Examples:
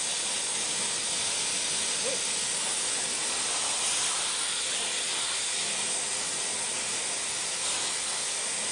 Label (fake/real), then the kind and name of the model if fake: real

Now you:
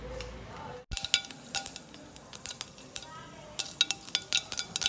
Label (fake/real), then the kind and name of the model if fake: real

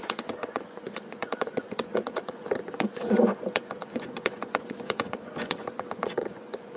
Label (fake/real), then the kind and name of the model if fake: fake, vocoder, Vocos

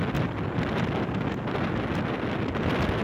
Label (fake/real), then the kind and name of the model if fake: real